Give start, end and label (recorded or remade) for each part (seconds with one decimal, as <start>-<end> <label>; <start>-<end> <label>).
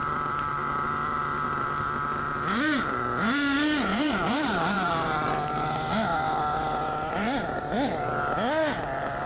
0.0-3.9 recorded; 3.9-5.3 remade; 5.3-7.1 recorded; 7.1-7.6 remade; 7.6-9.3 recorded